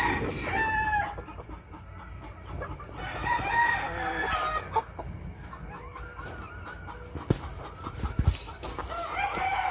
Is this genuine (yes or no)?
yes